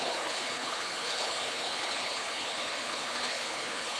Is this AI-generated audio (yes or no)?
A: yes